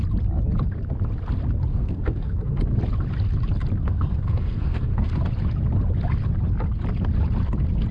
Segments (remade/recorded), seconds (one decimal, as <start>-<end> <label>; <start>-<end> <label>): 0.0-1.7 recorded; 1.7-2.6 remade; 2.6-3.8 recorded; 3.8-5.1 remade; 5.1-7.9 recorded